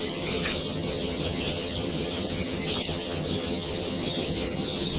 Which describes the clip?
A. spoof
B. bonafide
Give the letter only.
A